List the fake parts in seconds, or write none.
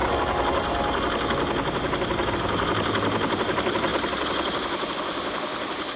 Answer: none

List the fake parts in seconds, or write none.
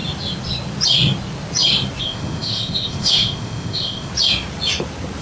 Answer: 2.0-4.1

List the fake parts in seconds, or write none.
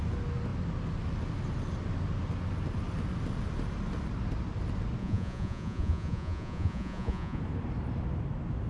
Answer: 5.0-7.4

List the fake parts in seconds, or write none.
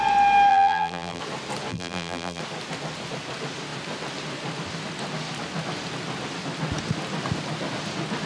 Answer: 0.5-1.2; 1.7-2.4